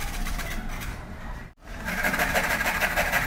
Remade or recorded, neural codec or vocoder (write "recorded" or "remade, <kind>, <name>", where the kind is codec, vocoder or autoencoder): remade, vocoder, BigVGAN v2